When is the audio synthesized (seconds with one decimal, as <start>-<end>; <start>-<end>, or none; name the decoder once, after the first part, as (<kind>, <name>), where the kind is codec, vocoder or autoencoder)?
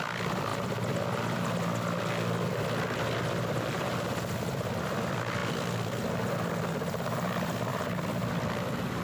7.7-8.3 (vocoder, BigVGAN v2)